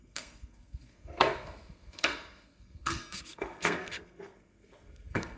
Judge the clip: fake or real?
fake